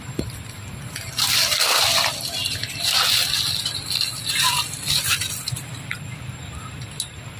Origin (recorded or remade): recorded